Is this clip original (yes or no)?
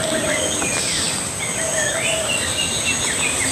yes